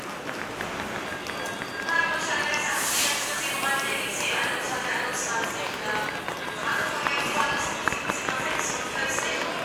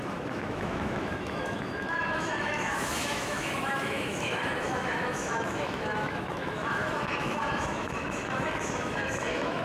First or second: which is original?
first